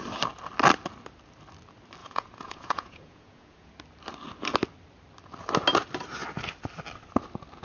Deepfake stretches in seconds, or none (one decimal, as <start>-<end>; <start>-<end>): 2.0-3.7